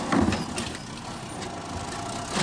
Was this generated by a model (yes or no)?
no